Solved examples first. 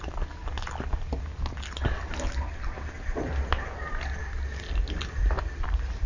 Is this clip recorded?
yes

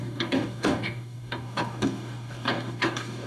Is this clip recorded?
no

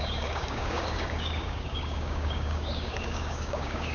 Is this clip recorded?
no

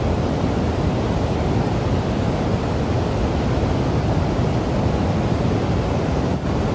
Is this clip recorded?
yes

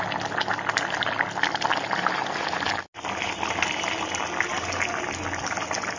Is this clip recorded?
yes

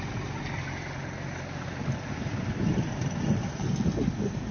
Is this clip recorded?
yes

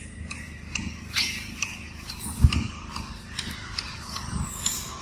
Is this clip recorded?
no